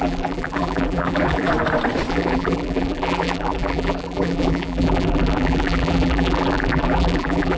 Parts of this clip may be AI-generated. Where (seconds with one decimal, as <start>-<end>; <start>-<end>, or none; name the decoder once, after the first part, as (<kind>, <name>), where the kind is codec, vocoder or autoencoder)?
0.0-1.5 (vocoder, BigVGAN v2); 2.1-7.6